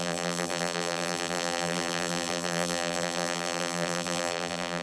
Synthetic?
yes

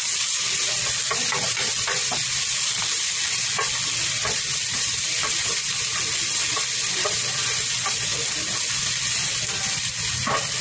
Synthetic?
no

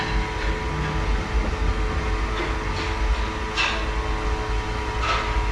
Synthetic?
no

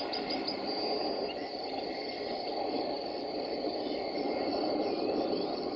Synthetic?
no